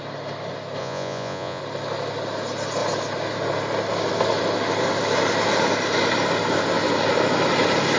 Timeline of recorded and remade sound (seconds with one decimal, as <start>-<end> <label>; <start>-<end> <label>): 0.0-0.8 recorded; 0.8-1.6 remade; 1.6-8.0 recorded